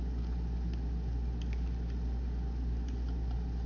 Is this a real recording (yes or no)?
yes